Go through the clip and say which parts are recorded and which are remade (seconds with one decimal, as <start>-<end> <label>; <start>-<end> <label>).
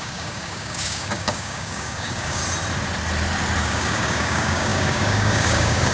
0.0-2.4 remade; 2.4-3.6 recorded; 3.6-5.9 remade